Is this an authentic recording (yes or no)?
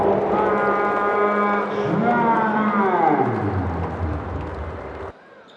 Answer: yes